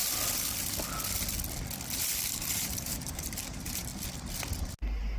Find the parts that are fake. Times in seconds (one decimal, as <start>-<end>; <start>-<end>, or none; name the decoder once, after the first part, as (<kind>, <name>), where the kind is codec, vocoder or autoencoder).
2.5-3.9 (vocoder, BigVGAN v2)